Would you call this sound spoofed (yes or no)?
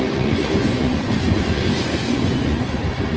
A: yes